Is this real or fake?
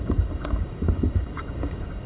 fake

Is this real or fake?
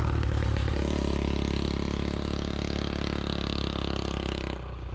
real